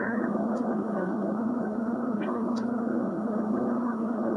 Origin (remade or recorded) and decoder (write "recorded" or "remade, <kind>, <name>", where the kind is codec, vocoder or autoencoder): remade, codec, SNAC